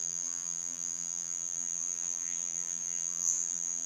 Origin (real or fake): fake